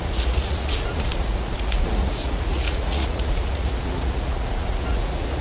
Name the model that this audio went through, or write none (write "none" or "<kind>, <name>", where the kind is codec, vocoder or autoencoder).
vocoder, Vocos